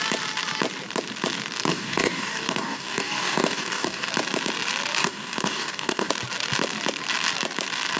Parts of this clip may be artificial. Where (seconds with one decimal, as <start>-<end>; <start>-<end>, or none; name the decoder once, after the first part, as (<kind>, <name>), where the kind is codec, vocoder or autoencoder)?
1.7-4.1 (codec, DAC); 5.0-6.1